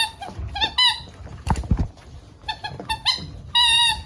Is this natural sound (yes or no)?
yes